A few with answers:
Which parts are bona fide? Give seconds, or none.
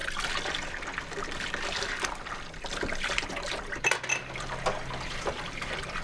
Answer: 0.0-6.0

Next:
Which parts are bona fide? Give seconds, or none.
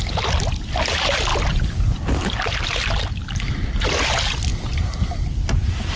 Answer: 0.0-4.7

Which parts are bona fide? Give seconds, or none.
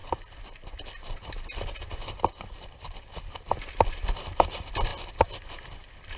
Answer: 3.7-6.2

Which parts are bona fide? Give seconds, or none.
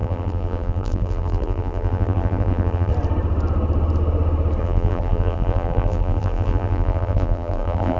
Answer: 2.9-4.6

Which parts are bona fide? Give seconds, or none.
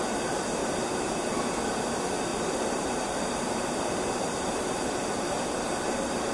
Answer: 0.0-0.6; 1.3-2.3; 4.7-6.3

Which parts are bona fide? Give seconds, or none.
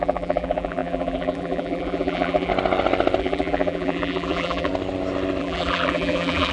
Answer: 2.5-3.2; 4.7-5.4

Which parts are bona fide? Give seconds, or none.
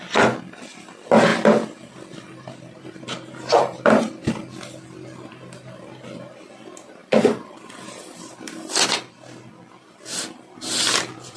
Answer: 0.0-1.3; 4.3-7.0; 8.3-11.4